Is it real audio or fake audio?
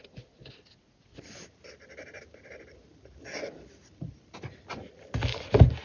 real